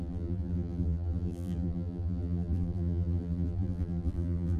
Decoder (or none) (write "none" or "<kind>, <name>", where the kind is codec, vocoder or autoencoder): vocoder, BigVGAN v2